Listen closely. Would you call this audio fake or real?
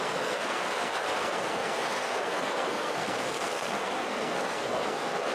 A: fake